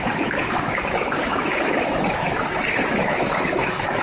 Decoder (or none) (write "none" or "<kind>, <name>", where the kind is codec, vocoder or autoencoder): autoencoder, DAC-VAE